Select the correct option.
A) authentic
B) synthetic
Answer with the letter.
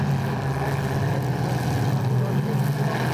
A